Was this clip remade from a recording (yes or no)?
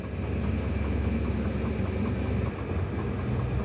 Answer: no